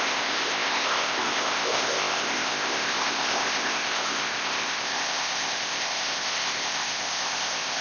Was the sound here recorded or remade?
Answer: remade